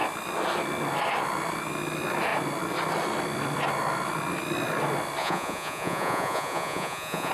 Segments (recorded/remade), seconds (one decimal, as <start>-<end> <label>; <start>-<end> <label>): 0.0-5.2 recorded; 5.2-7.3 remade